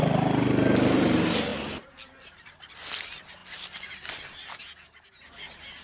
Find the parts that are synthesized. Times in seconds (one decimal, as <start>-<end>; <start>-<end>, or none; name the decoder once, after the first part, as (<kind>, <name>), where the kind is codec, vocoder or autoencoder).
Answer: none